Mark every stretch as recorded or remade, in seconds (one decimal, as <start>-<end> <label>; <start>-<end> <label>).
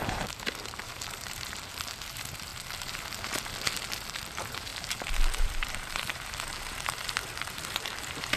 0.0-2.5 remade; 2.5-4.1 recorded; 4.1-8.4 remade